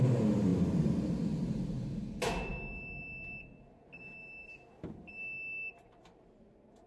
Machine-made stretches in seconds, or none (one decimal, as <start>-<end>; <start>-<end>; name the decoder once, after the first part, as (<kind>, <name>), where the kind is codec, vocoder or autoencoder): none

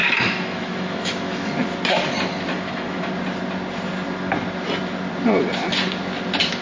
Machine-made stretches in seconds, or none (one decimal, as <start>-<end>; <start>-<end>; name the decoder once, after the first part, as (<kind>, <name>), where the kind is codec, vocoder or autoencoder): 0.0-1.5 (autoencoder, DAC-VAE); 2.5-3.1

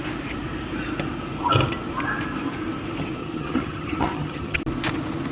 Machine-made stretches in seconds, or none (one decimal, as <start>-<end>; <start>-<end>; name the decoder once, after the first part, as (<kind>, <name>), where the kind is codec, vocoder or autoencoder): 3.2-4.6 (vocoder, HiFi-GAN)